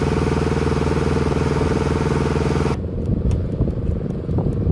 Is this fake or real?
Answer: real